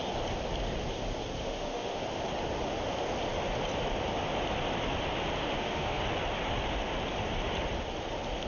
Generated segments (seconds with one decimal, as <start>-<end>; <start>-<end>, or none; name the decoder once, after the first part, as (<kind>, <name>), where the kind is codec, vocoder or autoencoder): 1.4-2.0 (autoencoder, DAC-VAE); 5.4-6.0